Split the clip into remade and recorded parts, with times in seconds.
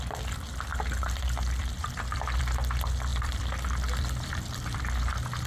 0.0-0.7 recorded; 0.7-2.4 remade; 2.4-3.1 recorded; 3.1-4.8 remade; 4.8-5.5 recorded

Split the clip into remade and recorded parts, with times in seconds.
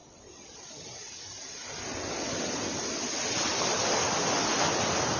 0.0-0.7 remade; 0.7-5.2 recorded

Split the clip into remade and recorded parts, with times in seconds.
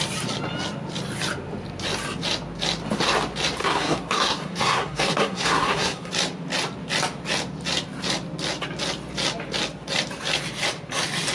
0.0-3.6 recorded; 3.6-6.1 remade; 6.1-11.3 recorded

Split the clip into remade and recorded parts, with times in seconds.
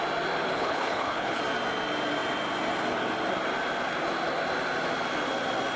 0.0-0.4 recorded; 0.4-1.4 remade; 1.4-5.8 recorded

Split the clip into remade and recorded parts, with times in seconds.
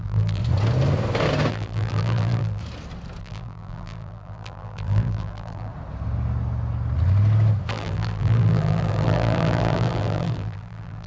0.0-0.4 remade; 0.4-1.5 recorded; 1.5-2.6 remade; 2.6-3.2 recorded; 3.2-5.7 remade; 5.7-7.7 recorded; 7.7-11.1 remade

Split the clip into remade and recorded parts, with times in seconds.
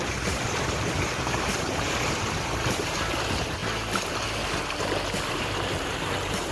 0.0-3.6 remade; 3.6-5.3 recorded; 5.3-6.5 remade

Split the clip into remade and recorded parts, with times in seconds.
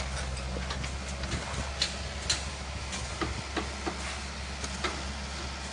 0.0-2.5 recorded; 2.5-3.1 remade; 3.1-5.7 recorded